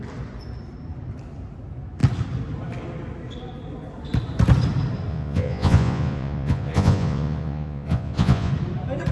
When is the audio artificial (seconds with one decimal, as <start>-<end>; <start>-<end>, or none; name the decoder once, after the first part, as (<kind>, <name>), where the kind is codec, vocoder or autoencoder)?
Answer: 5.1-8.5 (vocoder, Vocos)